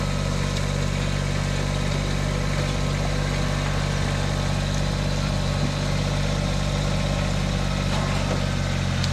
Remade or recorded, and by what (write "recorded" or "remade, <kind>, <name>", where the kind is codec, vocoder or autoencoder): recorded